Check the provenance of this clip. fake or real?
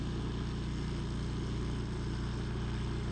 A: real